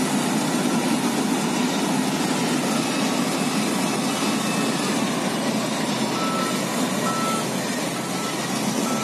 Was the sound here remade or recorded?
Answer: recorded